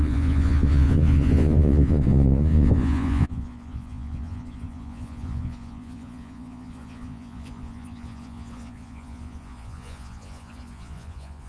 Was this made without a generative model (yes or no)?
no